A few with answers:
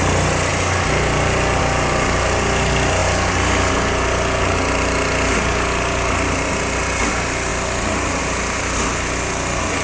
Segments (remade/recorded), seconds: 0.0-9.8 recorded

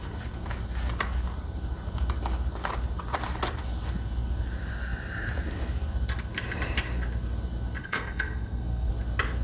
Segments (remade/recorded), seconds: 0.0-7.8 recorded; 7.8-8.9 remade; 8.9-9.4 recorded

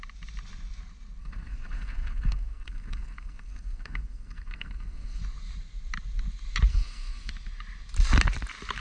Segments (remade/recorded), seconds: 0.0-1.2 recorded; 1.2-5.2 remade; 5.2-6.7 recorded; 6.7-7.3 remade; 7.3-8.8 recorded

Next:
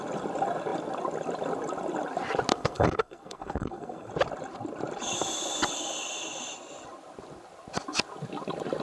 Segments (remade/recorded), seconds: 0.0-2.5 recorded; 2.5-4.1 remade; 4.1-8.8 recorded

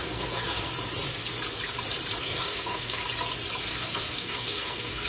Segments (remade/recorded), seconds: 0.0-0.7 remade; 0.7-2.2 recorded; 2.2-3.0 remade; 3.0-3.6 recorded; 3.6-5.1 remade

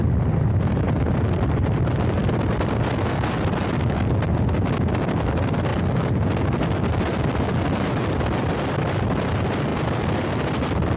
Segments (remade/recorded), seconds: 0.0-11.0 recorded

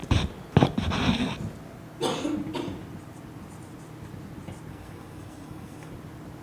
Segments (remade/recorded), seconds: 0.0-4.7 recorded; 4.7-5.9 remade; 5.9-6.4 recorded